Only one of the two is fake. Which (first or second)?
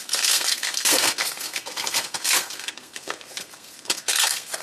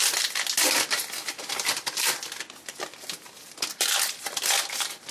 first